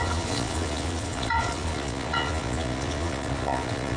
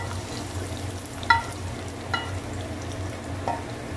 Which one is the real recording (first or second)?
second